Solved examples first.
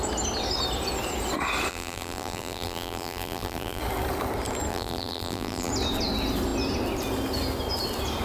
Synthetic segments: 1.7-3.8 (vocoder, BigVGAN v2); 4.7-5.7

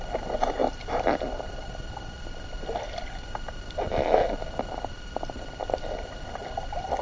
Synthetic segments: none

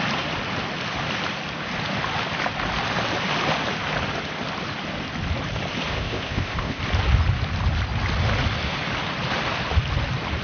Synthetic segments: 5.9-6.8 (codec, ZipCodec)

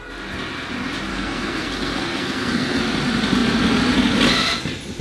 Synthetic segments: 1.1-2.8 (codec, SNAC)